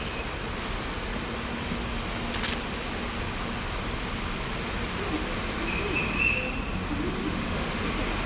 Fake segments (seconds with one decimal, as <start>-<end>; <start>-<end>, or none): 7.2-7.8